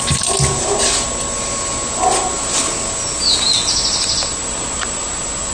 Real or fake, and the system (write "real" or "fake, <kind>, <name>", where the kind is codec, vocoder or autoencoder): real